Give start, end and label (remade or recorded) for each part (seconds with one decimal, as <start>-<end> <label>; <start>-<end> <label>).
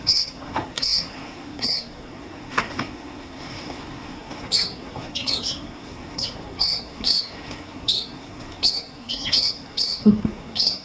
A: 0.0-10.8 remade